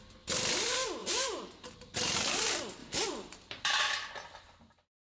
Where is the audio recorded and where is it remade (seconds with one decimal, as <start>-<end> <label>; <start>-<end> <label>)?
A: 0.0-1.0 recorded; 1.0-2.4 remade; 2.4-2.8 recorded; 2.8-3.7 remade; 3.7-5.0 recorded